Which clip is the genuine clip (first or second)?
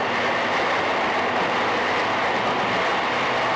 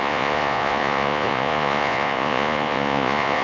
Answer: first